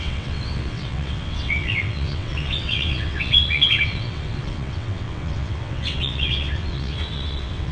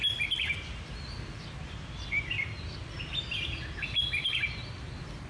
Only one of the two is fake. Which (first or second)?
first